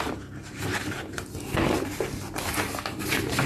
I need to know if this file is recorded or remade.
recorded